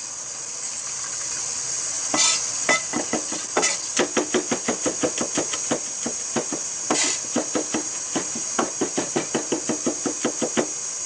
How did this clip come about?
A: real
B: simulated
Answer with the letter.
A